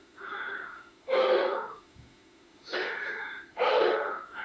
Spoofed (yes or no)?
yes